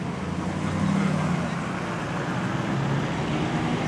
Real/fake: real